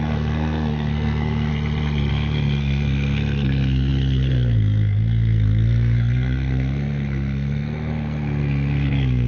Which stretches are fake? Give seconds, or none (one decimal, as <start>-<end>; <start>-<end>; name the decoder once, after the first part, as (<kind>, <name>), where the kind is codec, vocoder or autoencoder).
0.0-1.5 (codec, SNAC); 2.1-9.3